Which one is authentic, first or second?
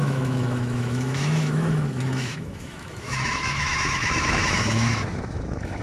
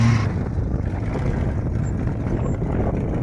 second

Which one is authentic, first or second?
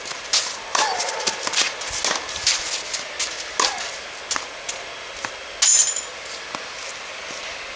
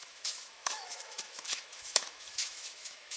first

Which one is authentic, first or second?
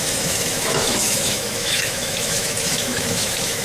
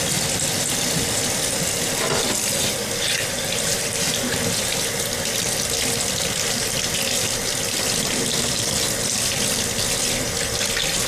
second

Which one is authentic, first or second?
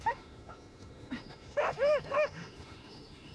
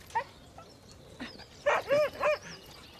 second